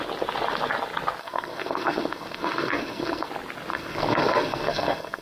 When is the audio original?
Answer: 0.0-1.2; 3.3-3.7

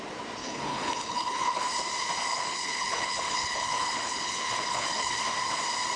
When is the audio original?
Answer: 0.0-0.4; 1.6-2.3; 5.2-6.0

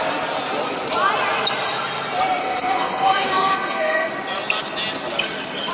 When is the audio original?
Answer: 0.0-2.4; 4.1-5.7

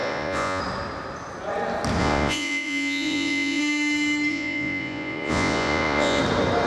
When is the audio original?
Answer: 0.6-2.0; 3.6-4.3; 6.2-6.7